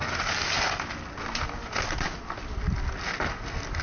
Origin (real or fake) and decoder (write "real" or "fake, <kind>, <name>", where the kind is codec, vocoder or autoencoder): real